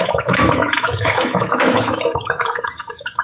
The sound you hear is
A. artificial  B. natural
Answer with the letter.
A